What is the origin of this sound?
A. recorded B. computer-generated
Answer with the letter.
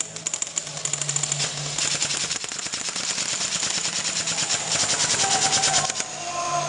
A